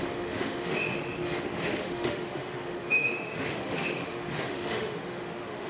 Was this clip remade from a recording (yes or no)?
yes